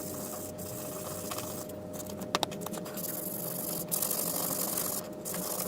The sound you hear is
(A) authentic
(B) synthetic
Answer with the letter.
A